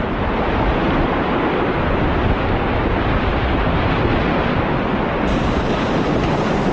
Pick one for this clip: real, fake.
real